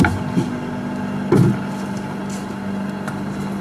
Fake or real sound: real